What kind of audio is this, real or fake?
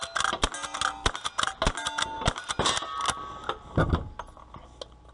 real